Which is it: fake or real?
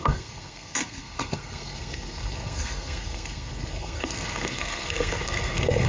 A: fake